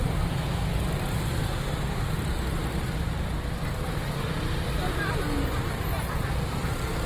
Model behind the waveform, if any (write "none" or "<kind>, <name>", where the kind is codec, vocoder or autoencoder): none